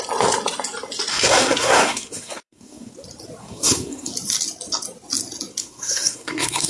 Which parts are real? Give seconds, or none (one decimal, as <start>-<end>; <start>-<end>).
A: 0.0-1.1; 2.9-3.4; 4.1-5.6